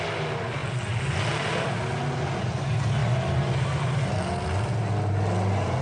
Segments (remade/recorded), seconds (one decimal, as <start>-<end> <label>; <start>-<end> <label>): 0.0-5.8 recorded